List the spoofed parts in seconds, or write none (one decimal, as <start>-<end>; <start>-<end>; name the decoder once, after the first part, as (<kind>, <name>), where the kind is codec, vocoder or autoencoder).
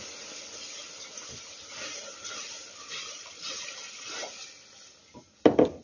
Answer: none